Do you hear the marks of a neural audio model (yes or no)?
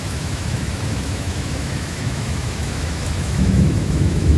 yes